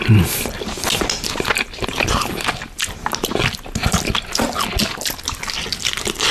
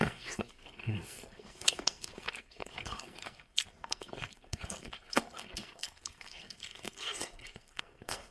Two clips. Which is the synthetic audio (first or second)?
second